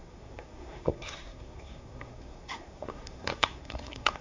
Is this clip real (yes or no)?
no